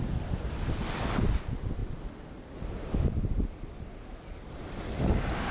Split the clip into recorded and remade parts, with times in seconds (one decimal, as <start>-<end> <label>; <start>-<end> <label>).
0.0-5.5 recorded